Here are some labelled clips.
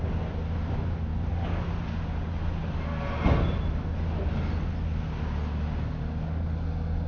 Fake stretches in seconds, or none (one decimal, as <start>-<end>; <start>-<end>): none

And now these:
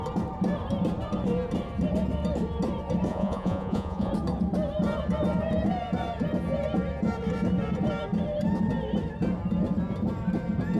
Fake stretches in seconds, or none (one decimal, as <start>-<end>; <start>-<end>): 3.1-4.1

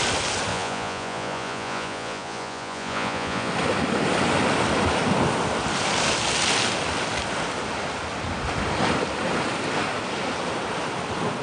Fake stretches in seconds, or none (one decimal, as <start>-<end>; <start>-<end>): 0.5-3.5